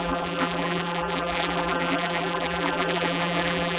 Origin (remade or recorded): remade